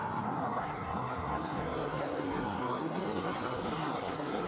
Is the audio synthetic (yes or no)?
yes